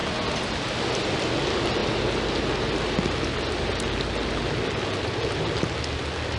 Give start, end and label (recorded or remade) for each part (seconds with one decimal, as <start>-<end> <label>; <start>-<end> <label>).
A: 0.0-6.4 recorded